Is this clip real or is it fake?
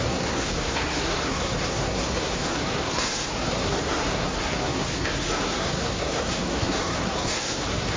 fake